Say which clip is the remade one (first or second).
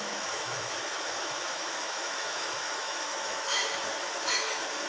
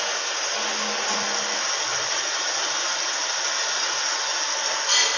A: first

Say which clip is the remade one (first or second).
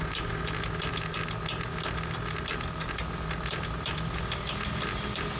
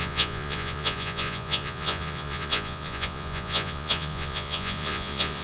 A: second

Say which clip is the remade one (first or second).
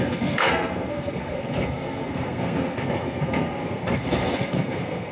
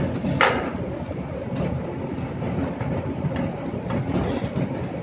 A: first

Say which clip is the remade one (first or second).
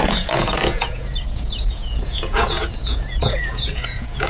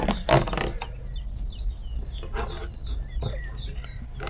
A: first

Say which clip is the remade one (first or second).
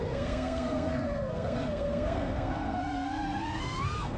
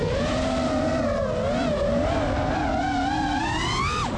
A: first